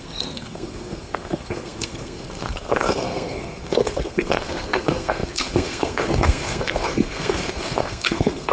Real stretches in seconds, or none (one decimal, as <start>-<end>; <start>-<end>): none